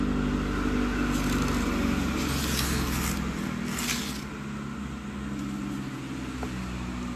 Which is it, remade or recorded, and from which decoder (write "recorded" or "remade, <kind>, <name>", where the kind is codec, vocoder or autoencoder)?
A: recorded